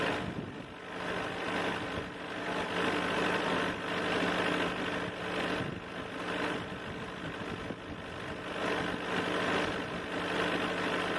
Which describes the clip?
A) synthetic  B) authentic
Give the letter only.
B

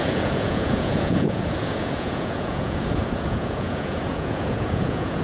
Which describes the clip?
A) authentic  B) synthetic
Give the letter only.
B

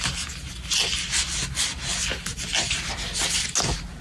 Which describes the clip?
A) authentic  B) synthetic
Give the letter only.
A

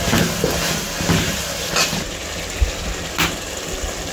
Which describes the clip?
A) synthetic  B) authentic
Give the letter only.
B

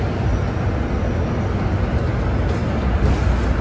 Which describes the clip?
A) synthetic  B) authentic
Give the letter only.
B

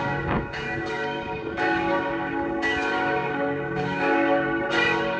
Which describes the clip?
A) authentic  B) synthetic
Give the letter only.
B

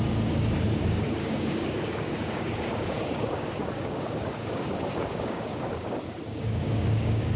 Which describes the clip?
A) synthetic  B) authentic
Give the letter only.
A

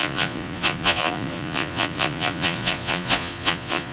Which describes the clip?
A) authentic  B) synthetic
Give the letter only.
B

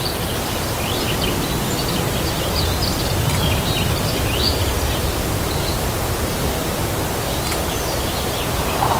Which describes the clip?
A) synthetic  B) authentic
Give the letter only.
B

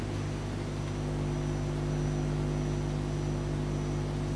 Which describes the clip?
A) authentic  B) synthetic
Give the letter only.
A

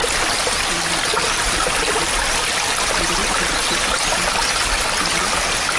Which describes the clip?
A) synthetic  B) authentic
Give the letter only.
B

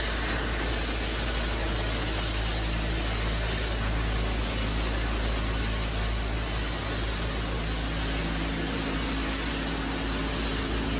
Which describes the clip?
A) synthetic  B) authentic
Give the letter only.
B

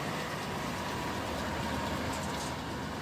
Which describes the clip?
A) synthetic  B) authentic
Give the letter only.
B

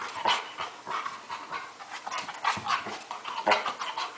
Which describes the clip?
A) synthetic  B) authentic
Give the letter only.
B